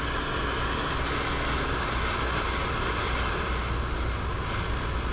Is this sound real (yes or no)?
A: yes